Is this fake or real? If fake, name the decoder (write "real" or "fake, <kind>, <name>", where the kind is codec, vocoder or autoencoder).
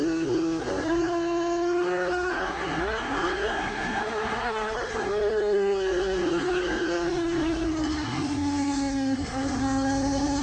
fake, codec, SNAC